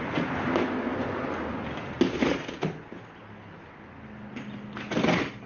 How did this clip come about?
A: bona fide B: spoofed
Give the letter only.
A